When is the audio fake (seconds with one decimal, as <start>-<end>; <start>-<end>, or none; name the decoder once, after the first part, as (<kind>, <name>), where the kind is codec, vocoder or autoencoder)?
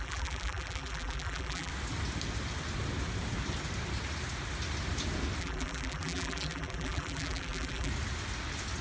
0.0-1.7 (vocoder, BigVGAN v2); 5.4-7.9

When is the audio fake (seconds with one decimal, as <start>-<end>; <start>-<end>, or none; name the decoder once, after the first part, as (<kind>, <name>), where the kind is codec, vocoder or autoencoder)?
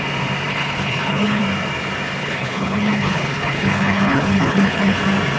0.5-1.4 (codec, HILCodec); 2.2-5.0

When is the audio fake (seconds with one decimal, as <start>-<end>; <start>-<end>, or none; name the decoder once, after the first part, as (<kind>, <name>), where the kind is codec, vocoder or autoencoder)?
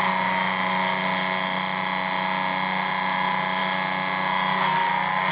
none